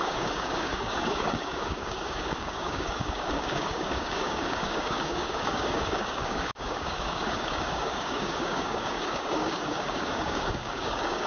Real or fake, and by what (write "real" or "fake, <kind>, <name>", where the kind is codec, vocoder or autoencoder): fake, codec, DAC